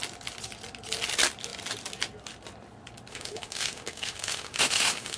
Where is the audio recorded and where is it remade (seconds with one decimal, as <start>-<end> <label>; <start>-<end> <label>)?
0.0-3.1 recorded; 3.1-5.2 remade